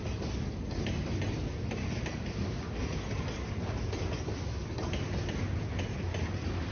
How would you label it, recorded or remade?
recorded